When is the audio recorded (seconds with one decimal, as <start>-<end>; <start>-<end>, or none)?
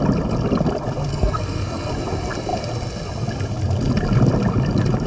0.0-1.1; 1.9-5.1